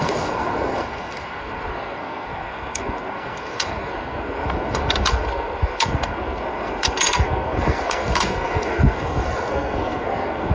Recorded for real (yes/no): no